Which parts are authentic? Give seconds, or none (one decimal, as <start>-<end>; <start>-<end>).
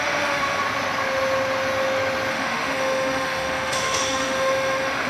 0.6-2.3